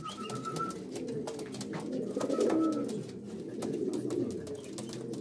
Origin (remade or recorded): recorded